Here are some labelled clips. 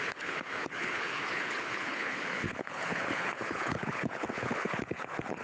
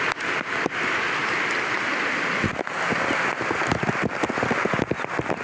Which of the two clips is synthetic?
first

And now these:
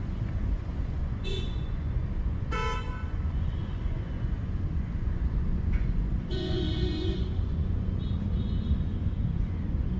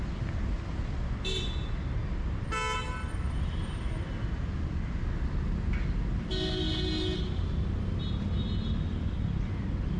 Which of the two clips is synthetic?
first